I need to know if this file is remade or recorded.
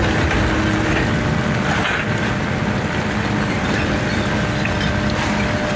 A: recorded